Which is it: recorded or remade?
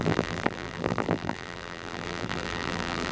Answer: remade